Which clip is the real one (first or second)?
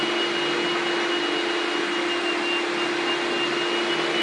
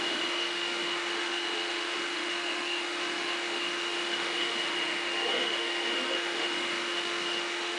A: first